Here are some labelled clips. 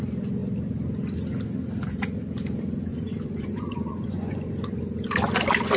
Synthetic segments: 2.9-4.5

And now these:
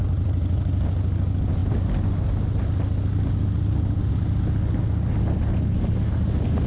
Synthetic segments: none

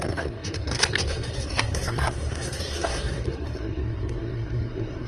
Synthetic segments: 0.0-5.1

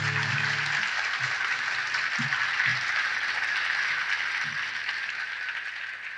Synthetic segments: none

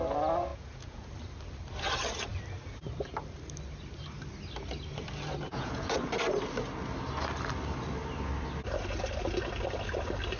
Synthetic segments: 0.5-1.1; 5.5-6.1

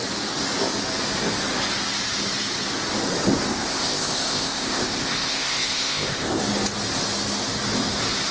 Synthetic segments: 3.5-6.4

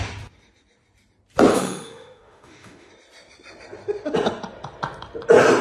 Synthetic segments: 1.5-2.9